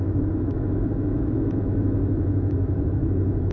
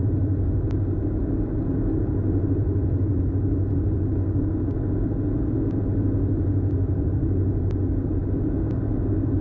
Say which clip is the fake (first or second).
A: first